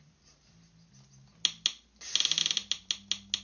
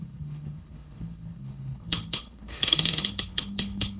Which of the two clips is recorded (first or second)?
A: first